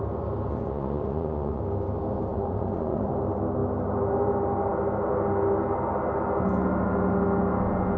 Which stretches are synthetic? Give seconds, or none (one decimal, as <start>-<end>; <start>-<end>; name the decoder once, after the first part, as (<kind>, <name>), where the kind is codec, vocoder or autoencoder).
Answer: 0.5-1.6 (vocoder, Vocos); 2.3-3.1